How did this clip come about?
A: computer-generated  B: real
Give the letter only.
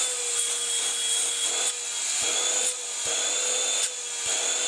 B